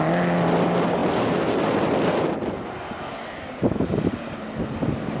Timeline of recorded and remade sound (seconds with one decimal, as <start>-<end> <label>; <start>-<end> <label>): 0.0-5.2 recorded